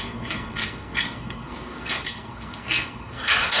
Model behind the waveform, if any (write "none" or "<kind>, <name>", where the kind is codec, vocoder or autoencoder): codec, SNAC